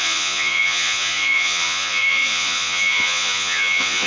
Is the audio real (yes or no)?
no